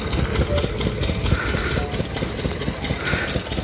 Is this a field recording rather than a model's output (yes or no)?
yes